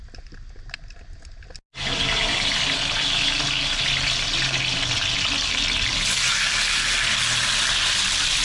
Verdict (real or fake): real